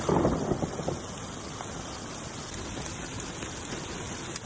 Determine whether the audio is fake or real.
real